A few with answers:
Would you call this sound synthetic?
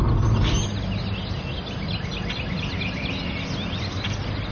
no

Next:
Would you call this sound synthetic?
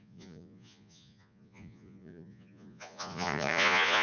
yes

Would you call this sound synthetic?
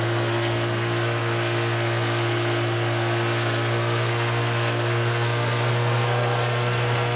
yes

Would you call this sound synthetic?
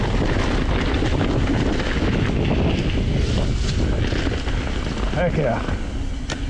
no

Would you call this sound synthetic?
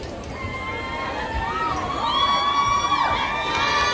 no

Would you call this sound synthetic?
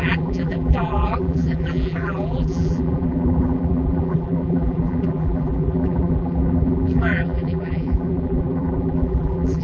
yes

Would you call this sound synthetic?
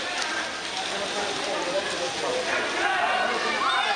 no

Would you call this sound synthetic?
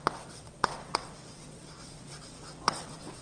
yes